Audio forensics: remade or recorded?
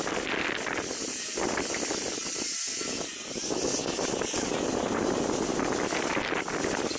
recorded